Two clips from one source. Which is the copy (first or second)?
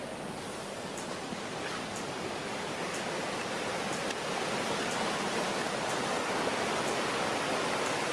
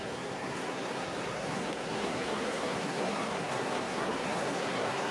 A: second